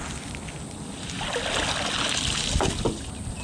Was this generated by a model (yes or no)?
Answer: no